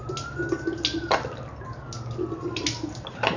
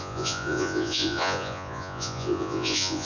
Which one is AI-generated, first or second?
second